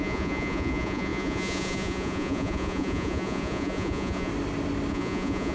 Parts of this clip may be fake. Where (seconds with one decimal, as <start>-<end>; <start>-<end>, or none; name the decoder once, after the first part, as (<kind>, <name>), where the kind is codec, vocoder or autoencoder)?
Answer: 0.0-4.3 (vocoder, Vocos); 4.9-5.5